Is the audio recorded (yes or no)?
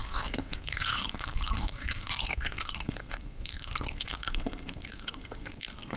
no